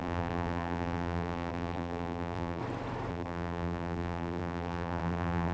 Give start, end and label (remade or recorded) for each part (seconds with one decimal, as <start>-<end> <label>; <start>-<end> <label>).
0.0-2.6 remade; 2.6-3.1 recorded; 3.1-5.5 remade